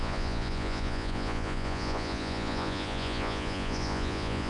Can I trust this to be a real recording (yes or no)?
no